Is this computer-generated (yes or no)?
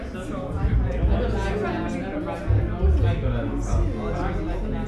no